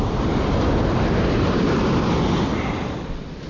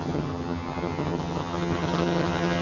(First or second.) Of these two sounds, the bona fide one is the first